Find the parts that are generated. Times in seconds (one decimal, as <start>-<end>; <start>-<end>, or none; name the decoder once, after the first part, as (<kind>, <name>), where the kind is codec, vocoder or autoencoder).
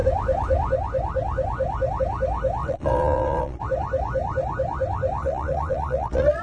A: 2.6-3.6 (vocoder, Vocos); 5.2-6.4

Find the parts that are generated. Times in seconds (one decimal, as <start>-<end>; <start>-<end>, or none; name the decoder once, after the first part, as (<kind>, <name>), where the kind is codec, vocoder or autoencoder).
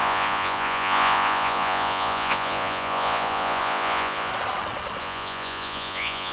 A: 0.0-4.3 (vocoder, Vocos); 5.0-6.3